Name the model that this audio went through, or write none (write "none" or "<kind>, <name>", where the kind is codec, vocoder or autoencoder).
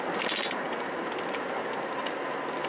none